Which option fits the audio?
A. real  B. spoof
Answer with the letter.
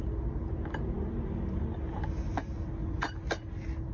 A